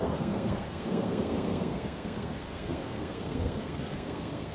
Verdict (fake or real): fake